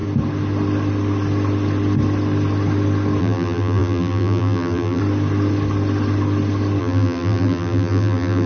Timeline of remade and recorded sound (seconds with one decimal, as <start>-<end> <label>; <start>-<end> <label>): 0.0-3.2 recorded; 3.2-5.0 remade; 5.0-6.8 recorded; 6.8-8.5 remade